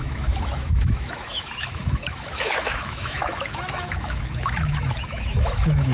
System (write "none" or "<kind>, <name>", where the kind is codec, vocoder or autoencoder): autoencoder, DAC-VAE